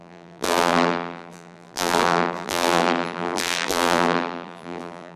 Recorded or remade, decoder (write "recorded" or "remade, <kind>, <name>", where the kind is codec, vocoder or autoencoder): remade, vocoder, BigVGAN v2